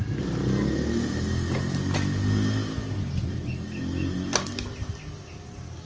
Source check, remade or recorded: recorded